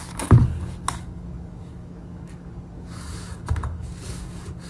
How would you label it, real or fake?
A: fake